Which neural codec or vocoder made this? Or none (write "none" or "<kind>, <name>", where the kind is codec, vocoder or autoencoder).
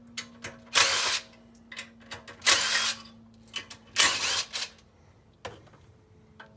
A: none